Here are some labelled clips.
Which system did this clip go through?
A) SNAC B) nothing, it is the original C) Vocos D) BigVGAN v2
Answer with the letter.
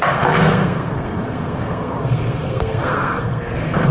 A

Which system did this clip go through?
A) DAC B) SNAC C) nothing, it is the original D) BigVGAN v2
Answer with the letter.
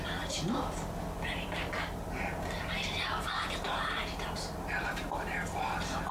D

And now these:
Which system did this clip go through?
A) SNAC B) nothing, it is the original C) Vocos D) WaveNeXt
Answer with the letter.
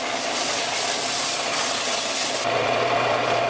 B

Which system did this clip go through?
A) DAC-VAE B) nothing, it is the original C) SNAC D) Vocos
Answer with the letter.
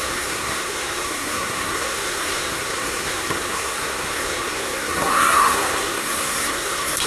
C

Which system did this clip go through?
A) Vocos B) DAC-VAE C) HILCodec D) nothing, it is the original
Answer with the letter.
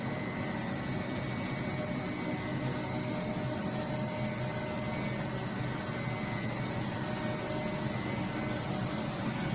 D